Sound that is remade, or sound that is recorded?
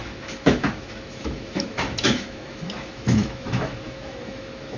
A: remade